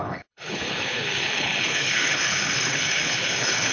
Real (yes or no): no